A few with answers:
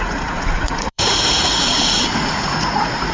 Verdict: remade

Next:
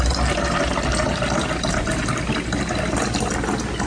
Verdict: recorded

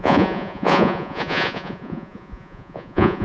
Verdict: remade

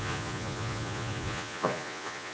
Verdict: remade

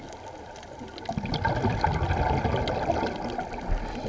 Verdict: recorded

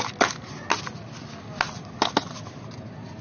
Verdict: recorded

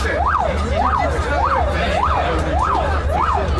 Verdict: recorded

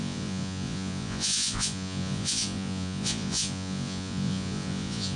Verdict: remade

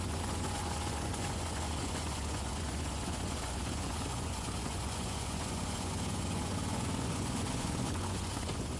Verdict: remade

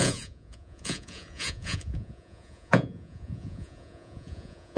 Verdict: remade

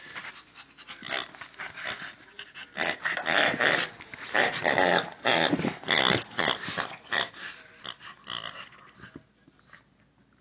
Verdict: recorded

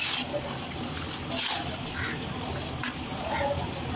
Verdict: recorded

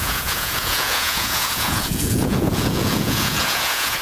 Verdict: remade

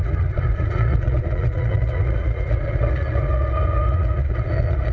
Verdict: remade